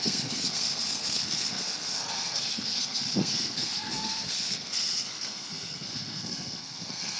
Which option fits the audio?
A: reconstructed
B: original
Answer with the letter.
A